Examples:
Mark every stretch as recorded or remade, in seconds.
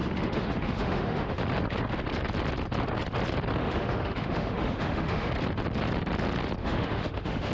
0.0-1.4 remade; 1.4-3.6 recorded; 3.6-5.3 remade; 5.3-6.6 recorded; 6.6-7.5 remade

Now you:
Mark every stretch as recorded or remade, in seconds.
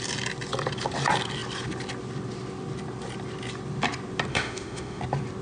0.0-4.3 recorded; 4.3-5.0 remade; 5.0-5.4 recorded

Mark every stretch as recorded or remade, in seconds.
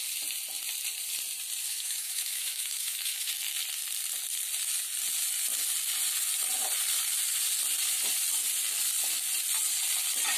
0.0-1.7 recorded; 1.7-3.3 remade; 3.3-10.4 recorded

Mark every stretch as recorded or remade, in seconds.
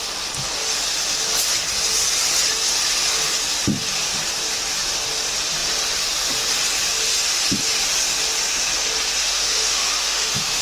0.0-9.2 recorded; 9.2-10.6 remade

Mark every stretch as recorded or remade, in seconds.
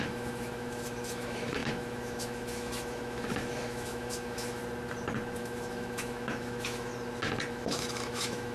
0.0-4.6 remade; 4.6-5.4 recorded; 5.4-6.9 remade; 6.9-7.5 recorded; 7.5-8.5 remade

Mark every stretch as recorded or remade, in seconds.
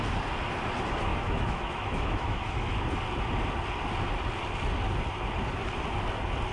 0.0-1.1 recorded; 1.1-2.8 remade; 2.8-6.5 recorded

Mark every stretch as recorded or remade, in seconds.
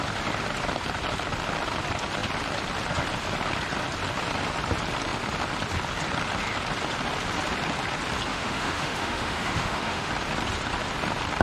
0.0-8.3 recorded; 8.3-10.1 remade; 10.1-11.4 recorded